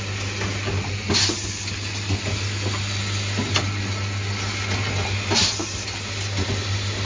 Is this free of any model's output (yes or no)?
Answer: yes